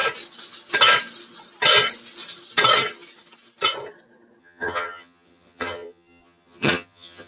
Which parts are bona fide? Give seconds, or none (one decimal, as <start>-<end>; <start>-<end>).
0.0-4.4